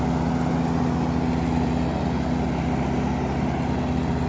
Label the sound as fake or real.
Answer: real